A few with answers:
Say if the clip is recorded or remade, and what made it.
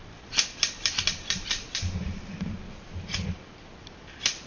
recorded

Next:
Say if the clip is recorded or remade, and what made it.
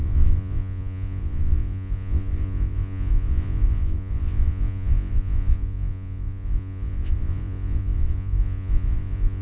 remade, vocoder, Vocos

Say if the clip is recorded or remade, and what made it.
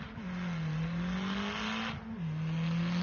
recorded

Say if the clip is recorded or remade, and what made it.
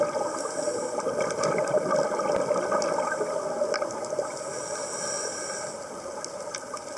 recorded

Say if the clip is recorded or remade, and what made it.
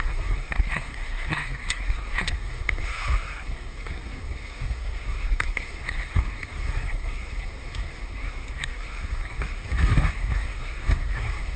remade, codec, SNAC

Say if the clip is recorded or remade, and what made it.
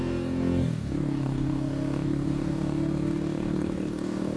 remade, codec, DAC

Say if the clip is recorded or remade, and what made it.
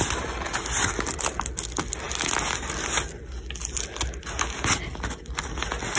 recorded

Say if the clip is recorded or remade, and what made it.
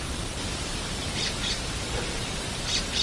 remade, vocoder, BigVGAN v2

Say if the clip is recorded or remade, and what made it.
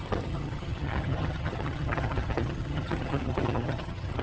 remade, vocoder, HiFi-GAN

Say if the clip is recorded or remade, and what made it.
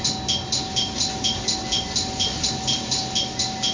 recorded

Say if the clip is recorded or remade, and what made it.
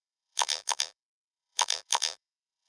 remade, vocoder, BigVGAN v2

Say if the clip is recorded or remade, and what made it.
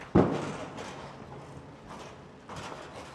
recorded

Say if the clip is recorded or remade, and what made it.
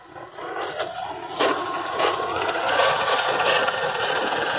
remade, vocoder, Vocos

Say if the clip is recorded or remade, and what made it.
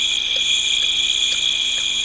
recorded